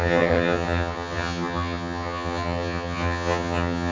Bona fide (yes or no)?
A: no